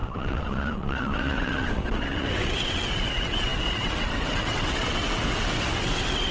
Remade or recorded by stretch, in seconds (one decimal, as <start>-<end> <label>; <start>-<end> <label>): 0.0-6.3 remade

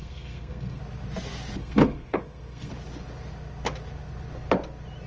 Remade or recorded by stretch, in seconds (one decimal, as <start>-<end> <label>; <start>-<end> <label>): 0.0-0.8 remade; 0.8-1.6 recorded; 1.6-2.7 remade; 2.7-5.1 recorded

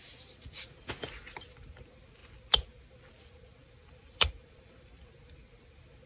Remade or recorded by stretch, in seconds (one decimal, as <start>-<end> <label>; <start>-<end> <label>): 0.0-3.6 recorded; 3.6-5.1 remade; 5.1-6.1 recorded